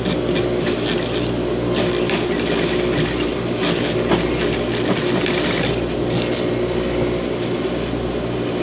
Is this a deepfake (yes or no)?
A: no